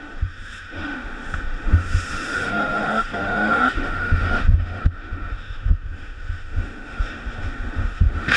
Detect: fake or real fake